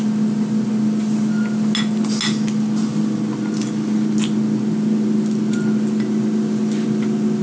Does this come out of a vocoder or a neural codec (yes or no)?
no